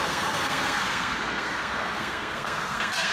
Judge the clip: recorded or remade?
remade